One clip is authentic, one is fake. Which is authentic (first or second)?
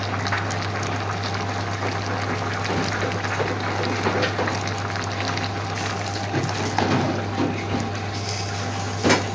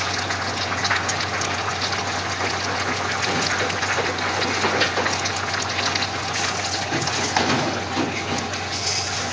first